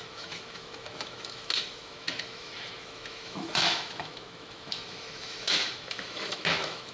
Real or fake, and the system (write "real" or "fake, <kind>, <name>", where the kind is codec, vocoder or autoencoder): fake, autoencoder, DAC-VAE